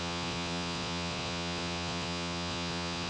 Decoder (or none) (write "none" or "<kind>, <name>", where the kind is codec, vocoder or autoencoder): vocoder, Vocos